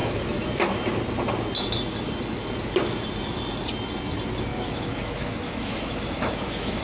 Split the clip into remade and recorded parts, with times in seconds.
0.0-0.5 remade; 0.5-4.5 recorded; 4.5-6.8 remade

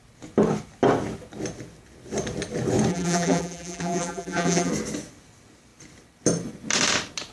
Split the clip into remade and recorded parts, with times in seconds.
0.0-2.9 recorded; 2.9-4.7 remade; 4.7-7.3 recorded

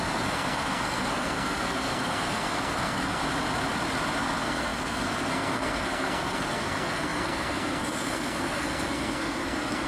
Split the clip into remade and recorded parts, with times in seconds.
0.0-3.2 remade; 3.2-4.2 recorded; 4.2-9.9 remade